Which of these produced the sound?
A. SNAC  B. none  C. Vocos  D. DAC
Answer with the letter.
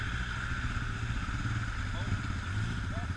B